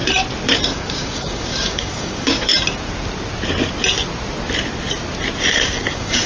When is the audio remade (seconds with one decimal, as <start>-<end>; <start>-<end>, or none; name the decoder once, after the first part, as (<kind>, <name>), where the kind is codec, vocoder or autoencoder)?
0.7-2.5 (codec, DAC); 5.5-6.3